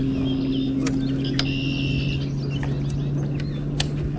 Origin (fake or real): real